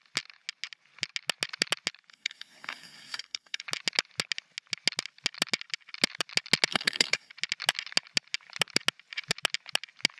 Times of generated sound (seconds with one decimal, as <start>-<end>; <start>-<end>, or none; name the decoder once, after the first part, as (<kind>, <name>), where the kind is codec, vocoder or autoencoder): 2.1-3.6 (codec, SNAC); 6.7-7.3